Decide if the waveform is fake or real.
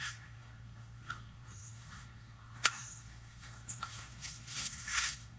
fake